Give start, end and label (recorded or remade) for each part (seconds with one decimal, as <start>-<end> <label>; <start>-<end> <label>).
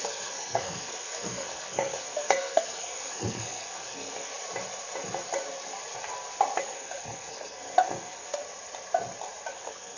0.0-4.3 remade; 4.3-6.6 recorded; 6.6-8.4 remade; 8.4-9.5 recorded; 9.5-10.0 remade